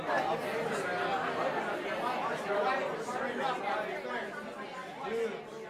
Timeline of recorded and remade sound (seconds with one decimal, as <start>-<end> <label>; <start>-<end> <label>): 0.0-5.7 recorded